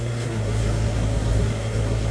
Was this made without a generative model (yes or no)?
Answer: no